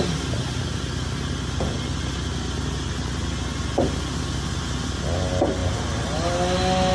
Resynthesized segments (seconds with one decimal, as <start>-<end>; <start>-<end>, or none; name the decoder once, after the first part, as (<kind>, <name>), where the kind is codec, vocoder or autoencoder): none